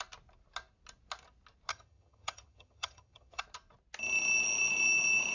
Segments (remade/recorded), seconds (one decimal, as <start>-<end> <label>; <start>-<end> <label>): 0.0-1.7 recorded; 1.7-3.4 remade; 3.4-5.3 recorded